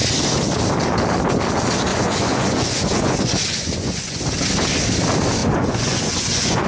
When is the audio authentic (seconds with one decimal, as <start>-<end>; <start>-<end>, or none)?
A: 0.0-1.9; 4.2-5.4